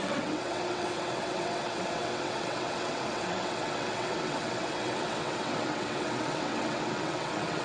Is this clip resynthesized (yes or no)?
yes